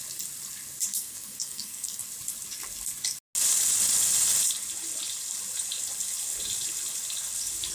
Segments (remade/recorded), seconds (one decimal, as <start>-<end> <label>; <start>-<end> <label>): 0.0-0.9 recorded; 0.9-2.0 remade; 2.0-7.7 recorded